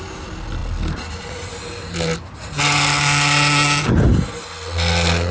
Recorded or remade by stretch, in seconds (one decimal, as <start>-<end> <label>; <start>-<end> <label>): 0.0-5.3 recorded